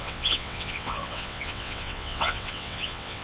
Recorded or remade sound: remade